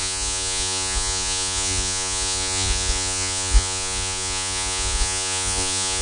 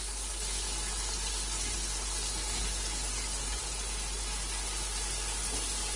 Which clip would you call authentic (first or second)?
second